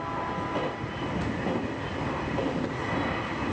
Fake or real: real